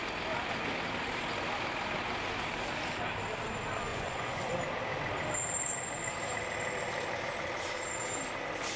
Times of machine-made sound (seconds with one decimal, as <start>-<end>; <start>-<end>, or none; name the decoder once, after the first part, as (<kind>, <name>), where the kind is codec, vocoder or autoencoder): 3.9-4.5 (vocoder, Vocos)